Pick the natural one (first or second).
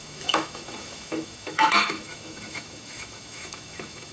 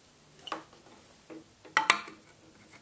second